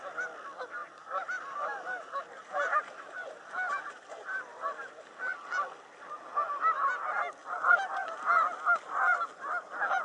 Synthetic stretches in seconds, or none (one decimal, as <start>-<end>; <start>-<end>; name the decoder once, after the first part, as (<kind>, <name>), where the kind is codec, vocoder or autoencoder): 0.8-4.9 (vocoder, BigVGAN v2)